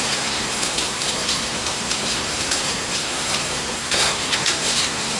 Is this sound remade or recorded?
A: remade